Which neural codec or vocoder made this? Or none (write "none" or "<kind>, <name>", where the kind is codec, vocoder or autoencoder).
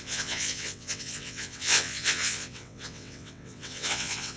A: vocoder, WaveNeXt